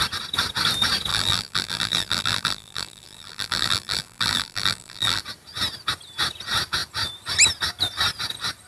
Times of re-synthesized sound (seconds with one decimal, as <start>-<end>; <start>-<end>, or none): 1.1-5.2